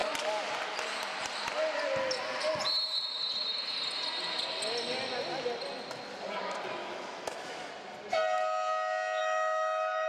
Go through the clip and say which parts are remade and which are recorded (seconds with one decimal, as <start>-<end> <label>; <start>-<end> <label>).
0.0-6.8 recorded; 6.8-7.7 remade; 7.7-9.2 recorded; 9.2-10.1 remade